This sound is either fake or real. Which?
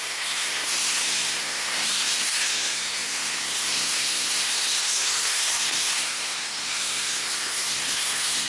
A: fake